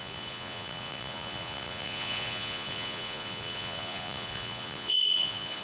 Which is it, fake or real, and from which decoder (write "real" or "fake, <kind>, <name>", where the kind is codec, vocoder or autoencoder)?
fake, vocoder, Vocos